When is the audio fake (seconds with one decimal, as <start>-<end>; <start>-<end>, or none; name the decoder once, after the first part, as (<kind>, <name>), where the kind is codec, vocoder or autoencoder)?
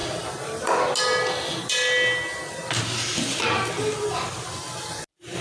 none